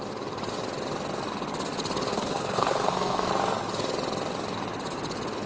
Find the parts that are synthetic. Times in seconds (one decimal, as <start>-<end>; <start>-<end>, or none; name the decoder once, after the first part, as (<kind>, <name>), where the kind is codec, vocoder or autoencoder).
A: 2.1-3.3 (codec, SNAC)